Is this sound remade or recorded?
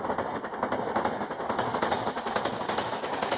recorded